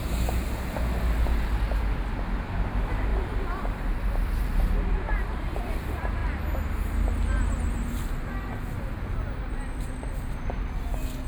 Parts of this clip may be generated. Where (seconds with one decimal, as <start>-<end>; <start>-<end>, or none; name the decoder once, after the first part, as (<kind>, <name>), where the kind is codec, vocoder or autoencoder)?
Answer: 3.1-4.6 (vocoder, BigVGAN v2)